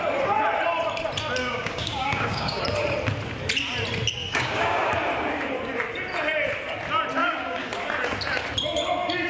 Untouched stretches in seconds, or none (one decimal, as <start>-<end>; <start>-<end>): 0.0-1.4; 2.6-4.2; 4.9-7.2; 7.7-9.3